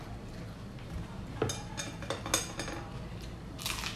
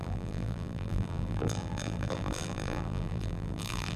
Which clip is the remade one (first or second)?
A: second